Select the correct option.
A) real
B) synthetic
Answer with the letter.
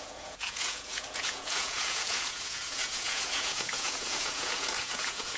B